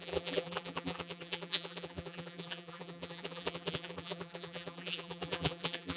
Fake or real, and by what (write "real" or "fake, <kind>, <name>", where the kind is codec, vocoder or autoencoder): fake, vocoder, BigVGAN v2